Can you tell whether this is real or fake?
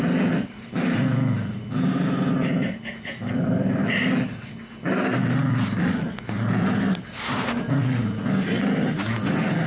real